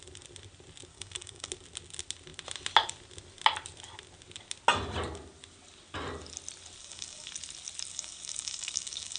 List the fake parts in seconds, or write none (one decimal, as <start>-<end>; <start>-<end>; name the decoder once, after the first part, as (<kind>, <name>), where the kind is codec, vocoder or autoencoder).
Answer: 0.9-1.5 (codec, DAC); 6.8-7.3; 7.9-9.2

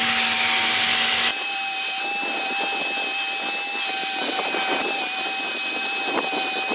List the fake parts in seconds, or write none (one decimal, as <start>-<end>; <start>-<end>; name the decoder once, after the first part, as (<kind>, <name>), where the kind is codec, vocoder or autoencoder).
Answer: 1.3-2.0 (vocoder, BigVGAN v2); 4.0-5.0

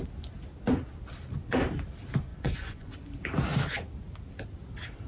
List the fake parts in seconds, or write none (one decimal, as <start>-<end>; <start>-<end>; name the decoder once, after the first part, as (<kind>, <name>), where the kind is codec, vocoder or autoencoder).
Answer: 2.3-2.9 (vocoder, Vocos)

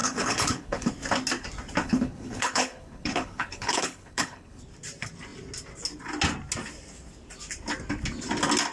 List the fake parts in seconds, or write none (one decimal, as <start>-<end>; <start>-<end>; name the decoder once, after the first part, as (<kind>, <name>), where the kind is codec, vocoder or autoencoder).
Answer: 0.0-0.9 (codec, HILCodec); 1.8-4.6